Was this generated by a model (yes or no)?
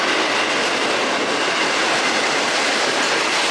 no